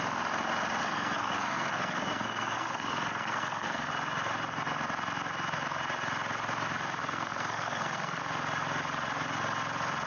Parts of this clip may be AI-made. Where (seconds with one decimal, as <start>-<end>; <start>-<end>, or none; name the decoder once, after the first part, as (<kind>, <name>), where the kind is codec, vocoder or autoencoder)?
0.8-3.9 (codec, SNAC); 7.0-8.2